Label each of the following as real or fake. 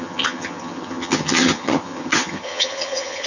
fake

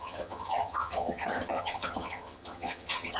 fake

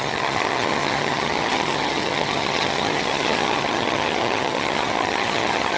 fake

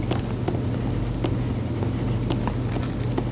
real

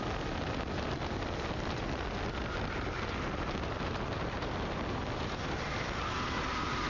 real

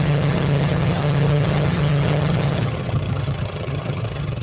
fake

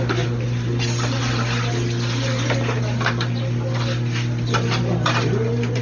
real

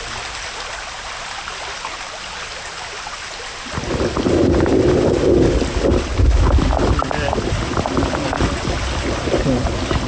real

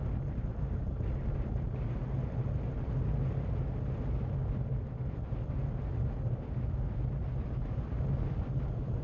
real